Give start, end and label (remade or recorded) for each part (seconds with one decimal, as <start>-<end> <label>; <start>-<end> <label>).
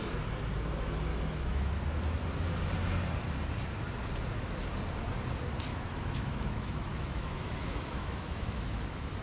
0.0-1.1 recorded; 1.1-1.8 remade; 1.8-5.7 recorded; 5.7-9.2 remade